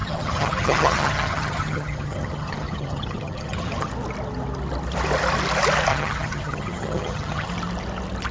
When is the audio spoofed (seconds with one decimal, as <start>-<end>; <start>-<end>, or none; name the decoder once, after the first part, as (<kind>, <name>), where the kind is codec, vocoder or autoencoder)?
0.0-3.9 (vocoder, HiFi-GAN); 5.9-7.5

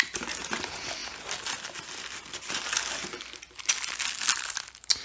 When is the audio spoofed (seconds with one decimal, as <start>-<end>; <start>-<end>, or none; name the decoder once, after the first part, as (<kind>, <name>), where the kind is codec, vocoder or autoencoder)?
none

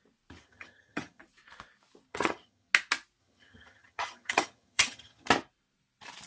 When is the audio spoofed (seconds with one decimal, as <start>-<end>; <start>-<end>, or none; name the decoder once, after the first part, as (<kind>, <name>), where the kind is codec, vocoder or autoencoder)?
0.4-1.2 (vocoder, HiFi-GAN); 2.1-2.7; 3.2-5.3

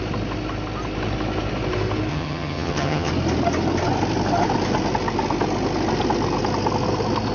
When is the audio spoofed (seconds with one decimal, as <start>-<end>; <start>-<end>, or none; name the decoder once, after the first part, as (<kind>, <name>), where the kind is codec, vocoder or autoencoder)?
2.1-3.1 (vocoder, HiFi-GAN)

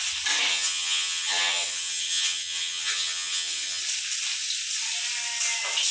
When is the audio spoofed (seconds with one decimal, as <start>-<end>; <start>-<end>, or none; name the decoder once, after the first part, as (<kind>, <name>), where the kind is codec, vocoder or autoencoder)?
0.5-3.8 (vocoder, HiFi-GAN)

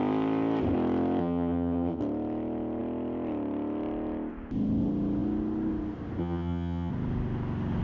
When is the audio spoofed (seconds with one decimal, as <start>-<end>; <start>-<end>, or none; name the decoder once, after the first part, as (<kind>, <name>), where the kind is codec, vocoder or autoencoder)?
1.2-2.0 (vocoder, HiFi-GAN); 6.2-6.9

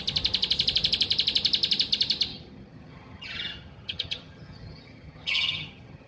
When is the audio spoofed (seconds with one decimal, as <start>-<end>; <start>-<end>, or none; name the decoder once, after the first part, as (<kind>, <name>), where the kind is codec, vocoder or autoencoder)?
2.3-6.1 (vocoder, HiFi-GAN)